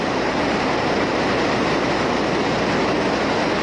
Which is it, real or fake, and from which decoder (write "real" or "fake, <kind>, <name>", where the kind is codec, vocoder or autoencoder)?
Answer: real